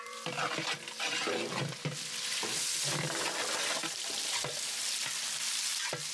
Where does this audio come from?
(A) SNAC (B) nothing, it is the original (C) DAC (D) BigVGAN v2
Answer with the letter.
D